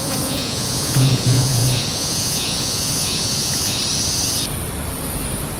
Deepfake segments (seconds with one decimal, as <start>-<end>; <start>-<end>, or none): 0.0-3.8